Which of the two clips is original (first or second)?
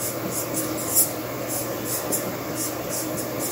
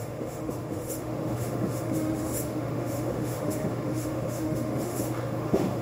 first